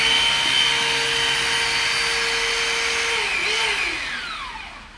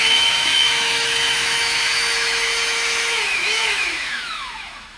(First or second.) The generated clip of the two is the second